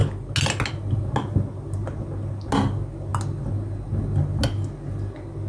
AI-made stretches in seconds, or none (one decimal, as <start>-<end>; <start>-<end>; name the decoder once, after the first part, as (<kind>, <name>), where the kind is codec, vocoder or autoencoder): none